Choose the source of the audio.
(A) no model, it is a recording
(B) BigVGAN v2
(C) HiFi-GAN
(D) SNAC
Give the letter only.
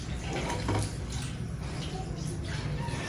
A